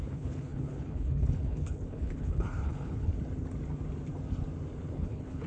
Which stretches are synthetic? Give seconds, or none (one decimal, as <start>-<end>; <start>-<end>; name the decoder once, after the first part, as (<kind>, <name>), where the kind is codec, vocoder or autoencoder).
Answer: 0.0-3.1 (codec, HILCodec); 4.9-5.5